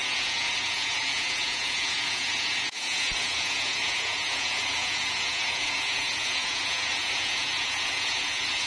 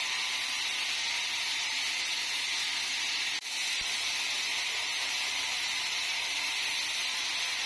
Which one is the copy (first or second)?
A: first